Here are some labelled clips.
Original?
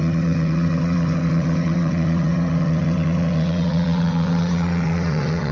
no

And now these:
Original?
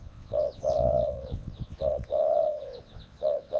no